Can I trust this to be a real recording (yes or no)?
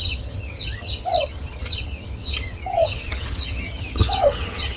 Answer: no